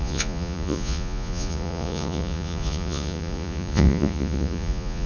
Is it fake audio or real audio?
fake